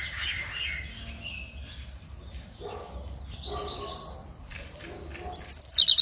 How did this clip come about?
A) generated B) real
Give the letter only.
B